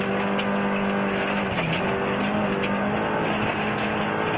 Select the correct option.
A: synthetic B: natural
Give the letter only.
B